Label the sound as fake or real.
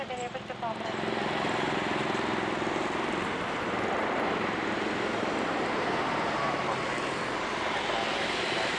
fake